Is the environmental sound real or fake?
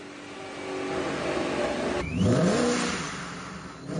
real